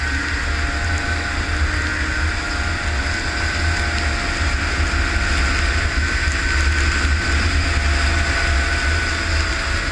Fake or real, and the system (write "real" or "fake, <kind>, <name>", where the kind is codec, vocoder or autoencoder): real